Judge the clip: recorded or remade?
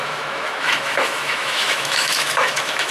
remade